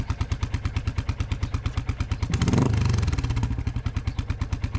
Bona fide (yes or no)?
yes